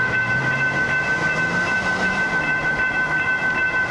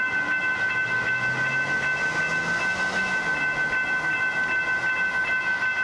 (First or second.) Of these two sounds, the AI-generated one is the first